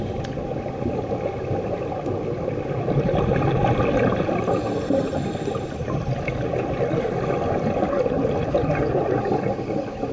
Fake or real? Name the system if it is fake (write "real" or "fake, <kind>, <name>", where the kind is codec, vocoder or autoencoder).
real